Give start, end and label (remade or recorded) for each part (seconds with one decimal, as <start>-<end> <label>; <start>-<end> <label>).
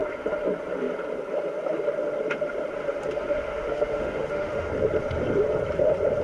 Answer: 0.0-3.5 recorded; 3.5-4.7 remade; 4.7-6.2 recorded